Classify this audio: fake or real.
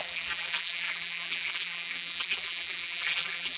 fake